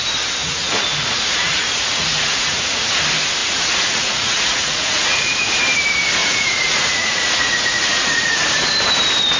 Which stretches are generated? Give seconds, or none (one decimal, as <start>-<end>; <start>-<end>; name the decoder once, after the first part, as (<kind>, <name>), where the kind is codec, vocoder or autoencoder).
0.4-3.0 (vocoder, Vocos); 3.4-5.5; 6.2-8.4